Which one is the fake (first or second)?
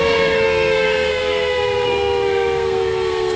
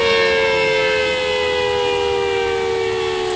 first